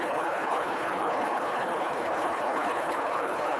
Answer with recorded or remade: remade